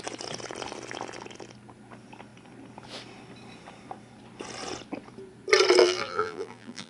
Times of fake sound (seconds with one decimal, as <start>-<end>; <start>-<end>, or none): 5.8-6.9